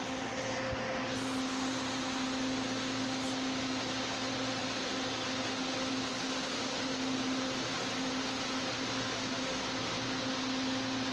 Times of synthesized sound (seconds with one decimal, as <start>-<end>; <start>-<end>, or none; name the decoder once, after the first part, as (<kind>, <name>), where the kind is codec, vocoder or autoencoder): none